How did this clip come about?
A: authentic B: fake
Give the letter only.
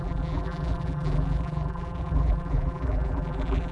B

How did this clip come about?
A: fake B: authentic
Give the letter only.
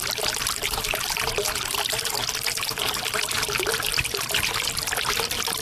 B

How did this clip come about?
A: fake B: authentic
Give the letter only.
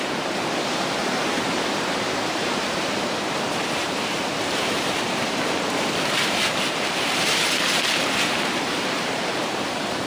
A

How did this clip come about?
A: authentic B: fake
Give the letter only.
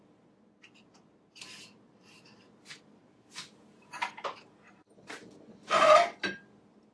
A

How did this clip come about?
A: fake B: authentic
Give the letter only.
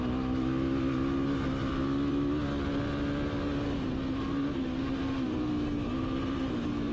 B